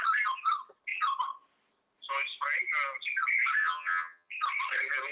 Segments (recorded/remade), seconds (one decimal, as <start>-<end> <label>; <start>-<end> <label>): 0.0-3.6 recorded; 3.6-4.3 remade; 4.3-5.1 recorded